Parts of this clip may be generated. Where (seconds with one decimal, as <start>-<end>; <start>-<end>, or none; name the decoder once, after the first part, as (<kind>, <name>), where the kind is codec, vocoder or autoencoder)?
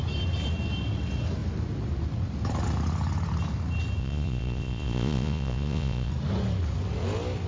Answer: 4.0-6.1 (vocoder, Vocos)